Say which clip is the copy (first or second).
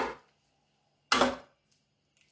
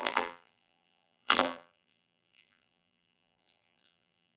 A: second